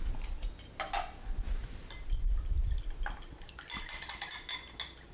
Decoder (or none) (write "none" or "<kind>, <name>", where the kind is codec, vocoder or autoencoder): none